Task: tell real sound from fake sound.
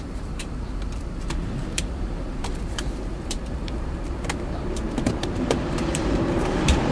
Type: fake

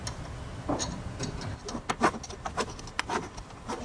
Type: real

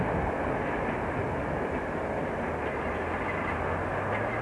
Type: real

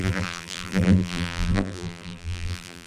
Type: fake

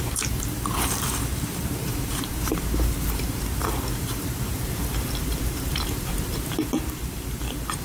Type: fake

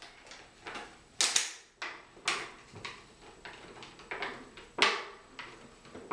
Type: real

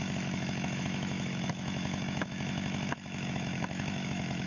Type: fake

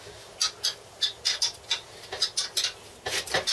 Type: real